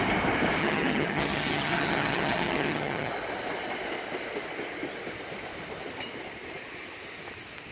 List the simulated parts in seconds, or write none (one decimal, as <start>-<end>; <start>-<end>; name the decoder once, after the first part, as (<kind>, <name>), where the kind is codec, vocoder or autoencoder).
0.6-3.1 (vocoder, HiFi-GAN)